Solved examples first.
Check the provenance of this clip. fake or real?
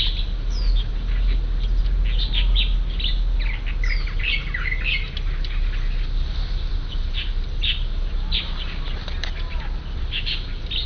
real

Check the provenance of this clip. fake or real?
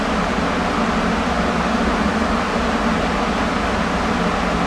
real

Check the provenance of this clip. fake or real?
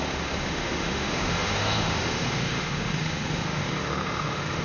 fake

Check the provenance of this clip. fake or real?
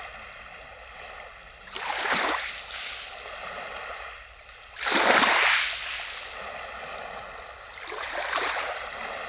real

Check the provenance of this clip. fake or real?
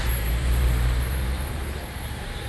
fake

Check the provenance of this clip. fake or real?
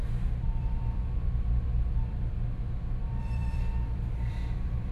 fake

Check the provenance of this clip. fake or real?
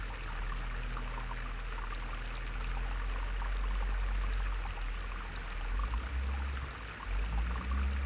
real